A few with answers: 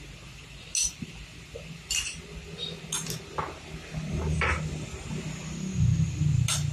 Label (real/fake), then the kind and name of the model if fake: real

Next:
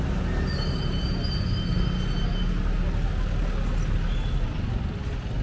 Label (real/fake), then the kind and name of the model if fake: real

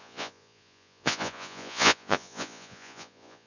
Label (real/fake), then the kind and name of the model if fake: fake, vocoder, Vocos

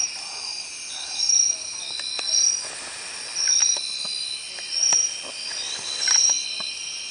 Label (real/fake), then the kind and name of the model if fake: real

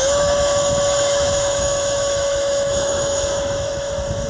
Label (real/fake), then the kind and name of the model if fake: fake, autoencoder, DAC-VAE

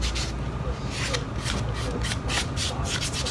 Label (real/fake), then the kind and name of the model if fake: real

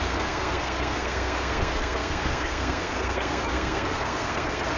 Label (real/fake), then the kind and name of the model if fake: fake, codec, SNAC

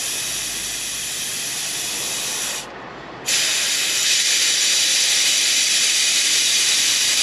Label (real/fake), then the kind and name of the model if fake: fake, vocoder, BigVGAN v2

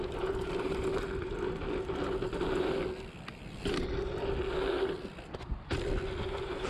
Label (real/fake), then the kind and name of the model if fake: real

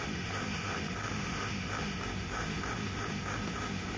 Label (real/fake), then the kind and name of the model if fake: fake, autoencoder, DAC-VAE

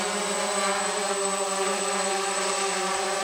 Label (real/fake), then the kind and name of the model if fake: fake, vocoder, BigVGAN v2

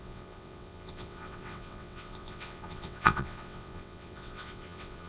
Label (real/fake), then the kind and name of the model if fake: fake, vocoder, WaveNeXt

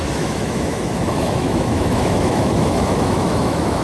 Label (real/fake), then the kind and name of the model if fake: fake, autoencoder, DAC-VAE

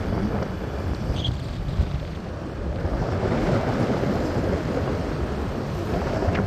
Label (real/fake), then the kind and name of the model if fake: real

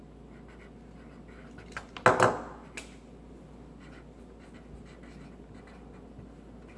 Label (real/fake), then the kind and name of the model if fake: real